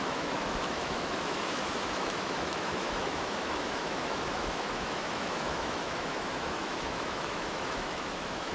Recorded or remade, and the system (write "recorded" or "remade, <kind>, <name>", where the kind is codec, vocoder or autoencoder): remade, autoencoder, DAC-VAE